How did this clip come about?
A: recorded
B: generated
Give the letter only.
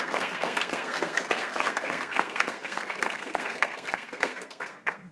B